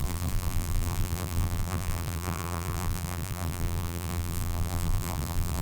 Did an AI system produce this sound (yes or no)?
yes